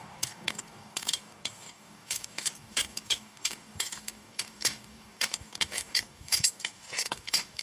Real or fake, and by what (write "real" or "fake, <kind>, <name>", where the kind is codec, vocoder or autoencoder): fake, codec, DAC